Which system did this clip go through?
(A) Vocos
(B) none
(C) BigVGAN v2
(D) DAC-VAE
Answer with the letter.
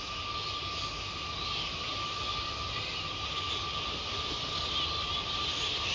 B